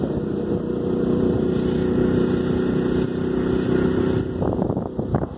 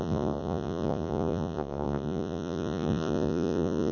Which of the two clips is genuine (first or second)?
first